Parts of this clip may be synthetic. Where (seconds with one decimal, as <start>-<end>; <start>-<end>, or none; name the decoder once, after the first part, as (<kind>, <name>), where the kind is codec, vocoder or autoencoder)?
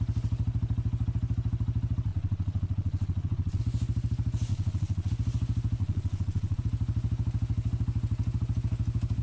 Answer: 2.1-3.6 (vocoder, Vocos); 4.5-5.1; 5.8-6.6